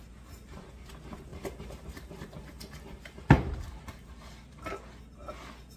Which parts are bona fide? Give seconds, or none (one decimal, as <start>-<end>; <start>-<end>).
0.0-1.3; 4.8-5.8